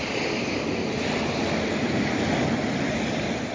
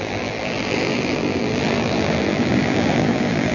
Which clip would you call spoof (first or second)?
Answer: second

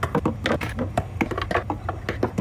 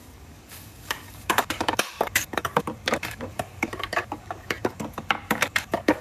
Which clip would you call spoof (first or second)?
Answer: second